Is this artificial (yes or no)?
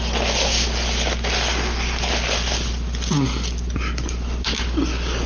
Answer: no